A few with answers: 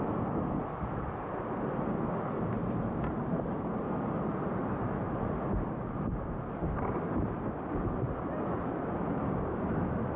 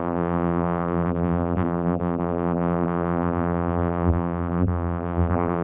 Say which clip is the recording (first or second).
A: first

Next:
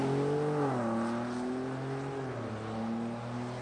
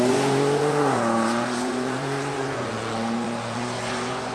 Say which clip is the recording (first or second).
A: first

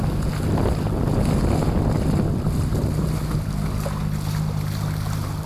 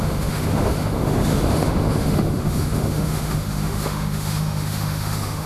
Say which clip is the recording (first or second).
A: first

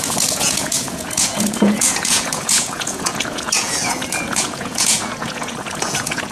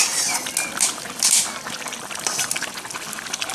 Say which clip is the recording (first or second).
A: second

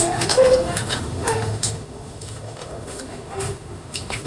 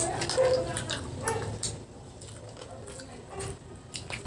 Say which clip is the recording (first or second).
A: second